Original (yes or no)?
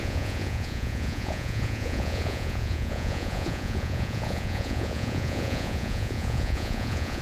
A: no